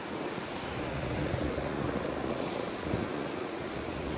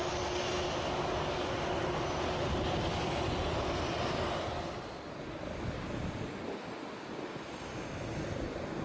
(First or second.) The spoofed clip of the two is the first